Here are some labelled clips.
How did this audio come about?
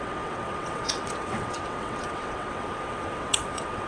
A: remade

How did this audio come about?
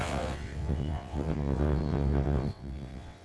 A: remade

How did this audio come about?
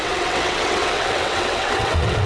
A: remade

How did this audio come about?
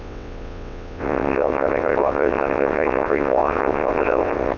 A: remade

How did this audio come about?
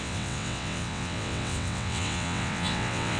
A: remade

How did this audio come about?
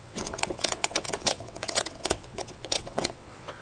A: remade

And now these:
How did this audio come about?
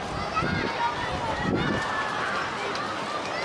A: recorded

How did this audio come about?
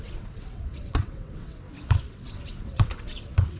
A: remade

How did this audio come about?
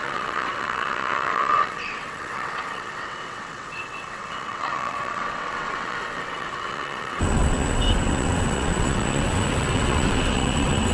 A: remade